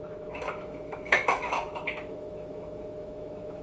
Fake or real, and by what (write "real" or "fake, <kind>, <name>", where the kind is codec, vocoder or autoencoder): fake, autoencoder, DAC-VAE